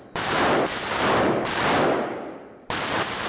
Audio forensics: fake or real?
real